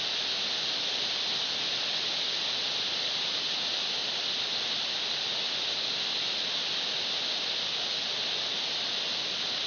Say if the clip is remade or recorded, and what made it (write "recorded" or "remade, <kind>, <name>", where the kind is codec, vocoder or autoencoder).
recorded